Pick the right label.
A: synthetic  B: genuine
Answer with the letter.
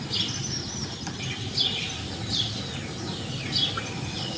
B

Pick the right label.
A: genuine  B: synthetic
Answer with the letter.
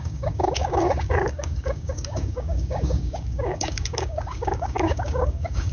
B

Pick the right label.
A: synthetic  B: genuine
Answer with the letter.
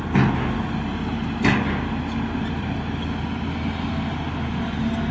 B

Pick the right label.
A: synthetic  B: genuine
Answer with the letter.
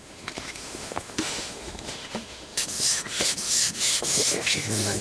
A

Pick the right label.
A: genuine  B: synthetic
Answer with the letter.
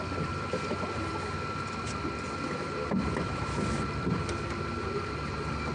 A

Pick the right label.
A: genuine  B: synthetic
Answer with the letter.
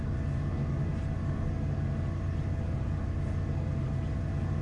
A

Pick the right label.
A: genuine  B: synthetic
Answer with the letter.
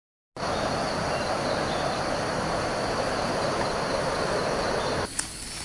A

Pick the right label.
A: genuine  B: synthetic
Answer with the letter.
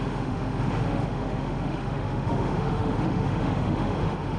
B